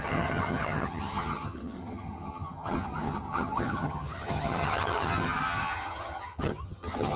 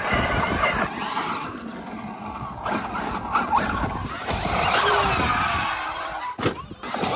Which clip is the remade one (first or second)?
first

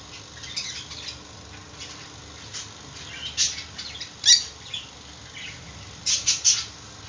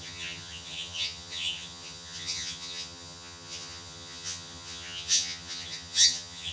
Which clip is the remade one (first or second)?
second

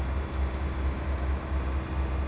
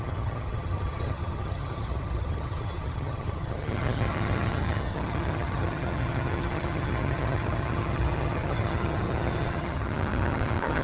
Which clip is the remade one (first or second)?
second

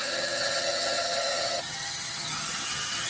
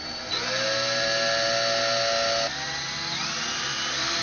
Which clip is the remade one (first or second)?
first